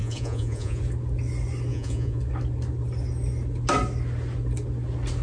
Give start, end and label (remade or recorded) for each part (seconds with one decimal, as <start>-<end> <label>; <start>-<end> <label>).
0.0-0.8 remade; 0.8-1.7 recorded; 1.7-2.2 remade; 2.2-5.2 recorded